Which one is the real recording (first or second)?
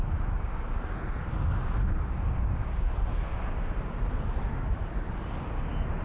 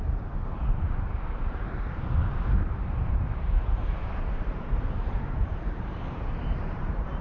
first